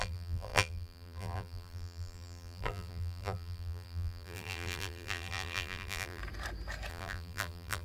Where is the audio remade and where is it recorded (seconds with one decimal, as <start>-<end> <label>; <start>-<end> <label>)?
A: 0.0-6.2 remade; 6.2-6.9 recorded; 6.9-7.8 remade